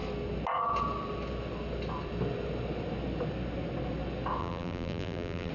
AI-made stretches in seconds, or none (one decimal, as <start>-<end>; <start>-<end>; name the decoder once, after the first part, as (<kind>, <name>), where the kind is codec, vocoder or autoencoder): 4.4-5.5 (vocoder, BigVGAN v2)